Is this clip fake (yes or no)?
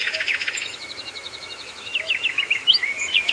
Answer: yes